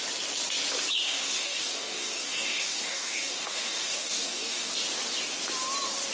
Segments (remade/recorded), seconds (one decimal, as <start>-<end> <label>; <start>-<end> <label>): 0.0-1.0 recorded; 1.0-4.7 remade; 4.7-6.1 recorded